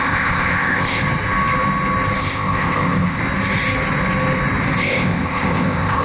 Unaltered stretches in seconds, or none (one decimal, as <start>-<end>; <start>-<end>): 1.0-2.2; 3.2-4.8